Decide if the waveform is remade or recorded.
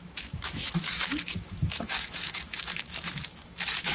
remade